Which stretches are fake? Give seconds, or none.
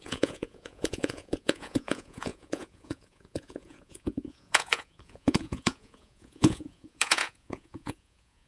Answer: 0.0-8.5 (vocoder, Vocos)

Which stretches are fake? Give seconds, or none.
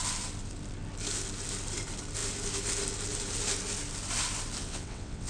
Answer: 4.6-5.3 (vocoder, WaveNeXt)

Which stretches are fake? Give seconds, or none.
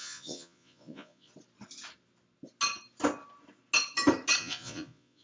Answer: 0.0-1.3 (vocoder, Vocos); 4.4-5.2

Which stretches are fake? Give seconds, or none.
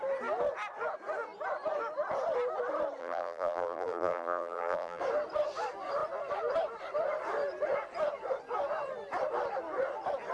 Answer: 3.0-5.0 (vocoder, BigVGAN v2)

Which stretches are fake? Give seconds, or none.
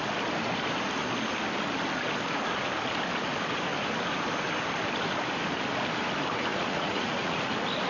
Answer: 6.5-7.4 (vocoder, Vocos)